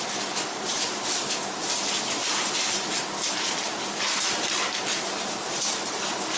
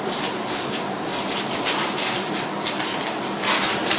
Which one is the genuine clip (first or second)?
second